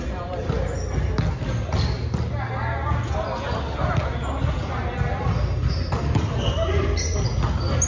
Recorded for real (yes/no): yes